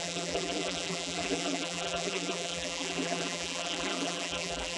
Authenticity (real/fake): fake